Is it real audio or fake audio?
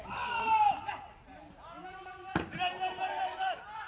real